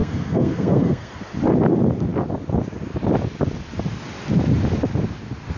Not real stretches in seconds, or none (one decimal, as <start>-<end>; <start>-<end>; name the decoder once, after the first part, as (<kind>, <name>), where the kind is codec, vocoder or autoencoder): 0.0-1.2 (codec, SNAC)